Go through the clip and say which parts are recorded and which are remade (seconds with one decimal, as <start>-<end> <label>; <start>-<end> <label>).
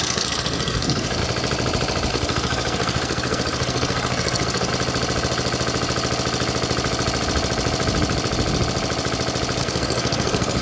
0.0-1.2 remade; 1.2-2.1 recorded; 2.1-4.7 remade; 4.7-9.6 recorded; 9.6-10.6 remade